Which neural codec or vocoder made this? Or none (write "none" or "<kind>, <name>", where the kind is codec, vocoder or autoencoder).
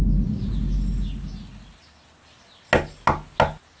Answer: none